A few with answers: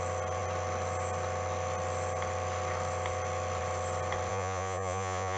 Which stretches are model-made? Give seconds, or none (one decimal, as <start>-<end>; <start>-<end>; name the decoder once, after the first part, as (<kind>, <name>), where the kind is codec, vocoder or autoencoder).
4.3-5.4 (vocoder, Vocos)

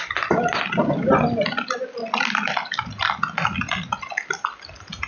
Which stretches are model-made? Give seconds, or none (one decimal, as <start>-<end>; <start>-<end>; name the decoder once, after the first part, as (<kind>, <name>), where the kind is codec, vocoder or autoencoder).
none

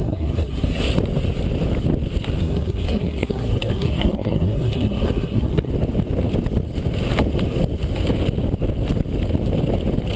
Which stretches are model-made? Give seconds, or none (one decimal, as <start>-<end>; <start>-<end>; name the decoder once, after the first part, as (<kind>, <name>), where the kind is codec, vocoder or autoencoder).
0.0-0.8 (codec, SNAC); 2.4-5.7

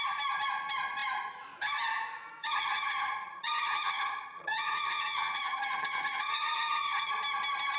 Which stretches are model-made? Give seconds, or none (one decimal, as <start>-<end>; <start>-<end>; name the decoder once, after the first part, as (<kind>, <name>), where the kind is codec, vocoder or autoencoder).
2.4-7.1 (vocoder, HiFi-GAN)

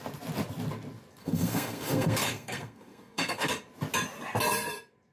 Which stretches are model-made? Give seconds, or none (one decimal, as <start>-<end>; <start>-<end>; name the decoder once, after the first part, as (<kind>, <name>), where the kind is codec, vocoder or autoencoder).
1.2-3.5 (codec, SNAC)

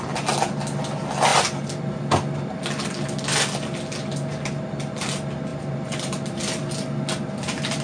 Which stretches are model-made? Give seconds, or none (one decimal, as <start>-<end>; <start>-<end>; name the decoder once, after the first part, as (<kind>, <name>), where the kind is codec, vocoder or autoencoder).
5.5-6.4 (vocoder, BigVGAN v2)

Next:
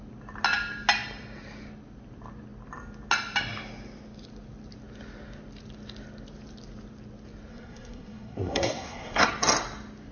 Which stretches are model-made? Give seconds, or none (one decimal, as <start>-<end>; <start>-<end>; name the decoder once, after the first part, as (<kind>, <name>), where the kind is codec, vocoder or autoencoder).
7.5-9.3 (codec, SNAC)